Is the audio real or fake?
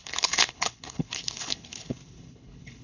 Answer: fake